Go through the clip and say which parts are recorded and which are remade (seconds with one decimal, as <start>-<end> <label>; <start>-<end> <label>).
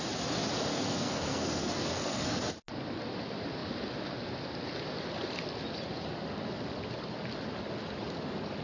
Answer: 0.0-0.7 recorded; 0.7-2.4 remade; 2.4-8.6 recorded